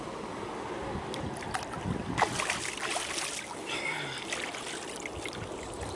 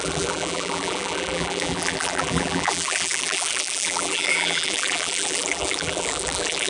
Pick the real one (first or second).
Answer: first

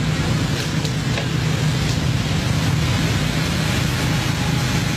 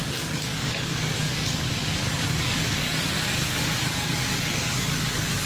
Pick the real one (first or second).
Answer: first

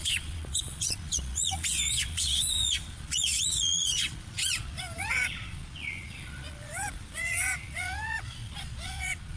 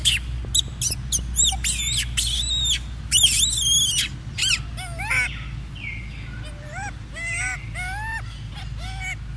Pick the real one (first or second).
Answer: second